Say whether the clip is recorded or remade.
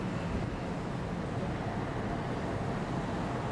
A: recorded